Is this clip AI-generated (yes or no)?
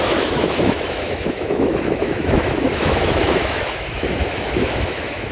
yes